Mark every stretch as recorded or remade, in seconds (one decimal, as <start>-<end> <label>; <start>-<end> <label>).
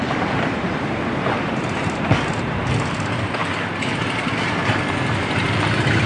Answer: 0.0-3.4 remade; 3.4-4.0 recorded; 4.0-6.1 remade